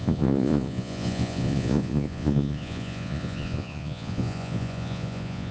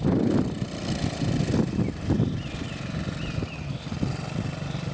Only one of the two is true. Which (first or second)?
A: second